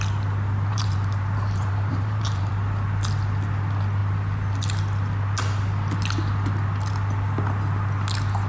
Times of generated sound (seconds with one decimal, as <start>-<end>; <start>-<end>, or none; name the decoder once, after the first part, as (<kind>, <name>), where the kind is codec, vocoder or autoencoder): 0.7-2.5 (vocoder, BigVGAN v2)